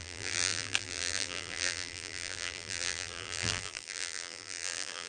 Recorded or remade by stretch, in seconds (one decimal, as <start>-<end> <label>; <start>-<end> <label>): 0.0-5.1 remade